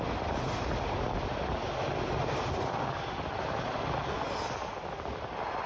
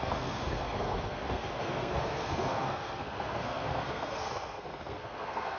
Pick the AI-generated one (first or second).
second